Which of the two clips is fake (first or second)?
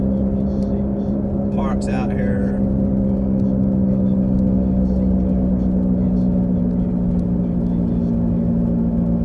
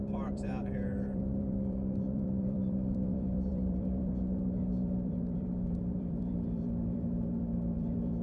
second